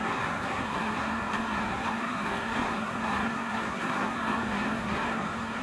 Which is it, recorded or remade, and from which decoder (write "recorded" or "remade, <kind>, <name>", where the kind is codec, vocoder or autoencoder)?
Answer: remade, codec, SNAC